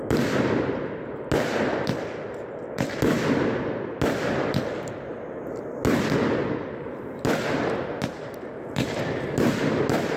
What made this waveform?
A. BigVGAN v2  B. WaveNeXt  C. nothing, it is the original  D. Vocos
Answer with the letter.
C